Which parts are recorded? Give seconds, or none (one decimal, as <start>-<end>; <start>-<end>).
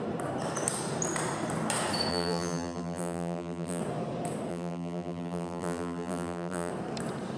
0.0-2.1; 3.8-4.5; 6.7-7.4